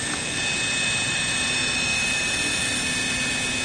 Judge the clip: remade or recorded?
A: recorded